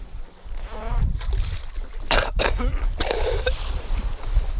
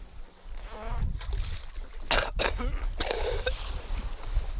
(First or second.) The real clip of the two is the second